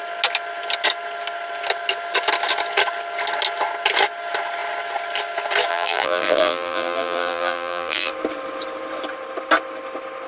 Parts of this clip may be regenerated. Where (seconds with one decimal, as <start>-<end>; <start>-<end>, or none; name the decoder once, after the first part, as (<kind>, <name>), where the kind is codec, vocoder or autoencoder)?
5.7-8.1 (vocoder, BigVGAN v2)